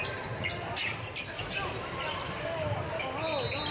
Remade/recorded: recorded